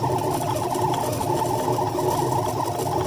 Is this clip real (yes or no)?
yes